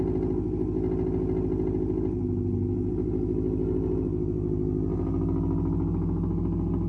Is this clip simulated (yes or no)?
no